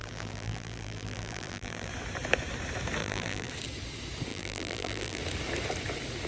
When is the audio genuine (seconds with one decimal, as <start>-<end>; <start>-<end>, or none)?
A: 1.9-3.0; 3.5-4.3; 5.2-6.3